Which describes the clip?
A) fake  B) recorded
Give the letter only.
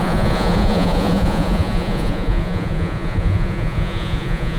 A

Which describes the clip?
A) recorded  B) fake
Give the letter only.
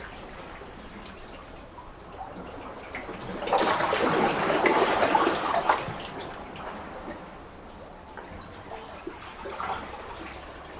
A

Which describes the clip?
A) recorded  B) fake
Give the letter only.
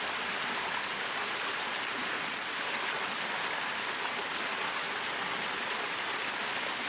A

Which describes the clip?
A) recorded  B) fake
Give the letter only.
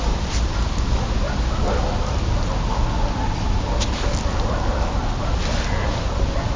A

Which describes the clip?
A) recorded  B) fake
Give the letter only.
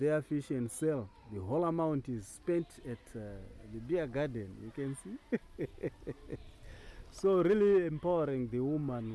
A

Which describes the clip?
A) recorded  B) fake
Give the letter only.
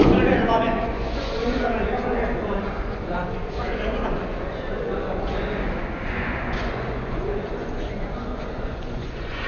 B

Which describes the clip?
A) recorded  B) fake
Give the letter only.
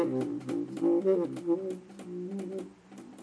A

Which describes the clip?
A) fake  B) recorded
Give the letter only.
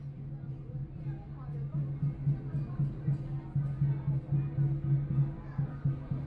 B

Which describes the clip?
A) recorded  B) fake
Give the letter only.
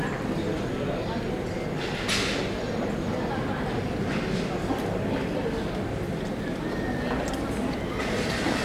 A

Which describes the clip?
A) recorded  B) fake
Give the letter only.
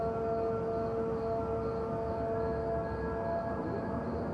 A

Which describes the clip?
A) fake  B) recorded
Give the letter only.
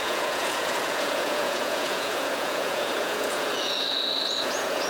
A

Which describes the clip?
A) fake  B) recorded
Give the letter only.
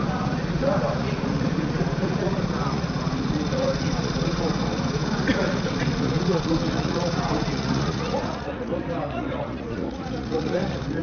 A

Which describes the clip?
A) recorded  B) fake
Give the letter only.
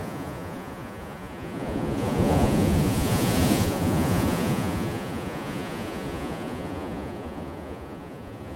B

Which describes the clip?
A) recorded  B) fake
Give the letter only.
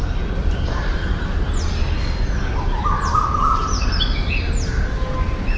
A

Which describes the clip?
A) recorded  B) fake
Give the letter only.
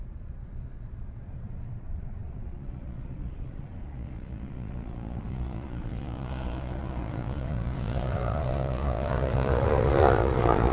B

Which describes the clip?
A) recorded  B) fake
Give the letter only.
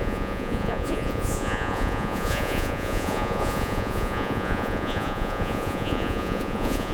B